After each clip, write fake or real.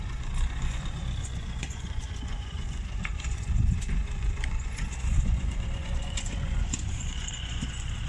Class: fake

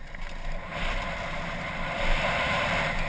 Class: real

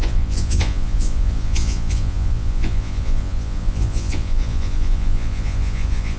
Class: fake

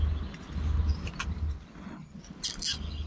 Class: real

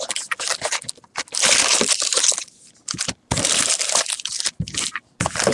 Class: real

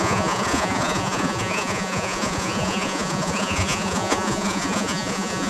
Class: fake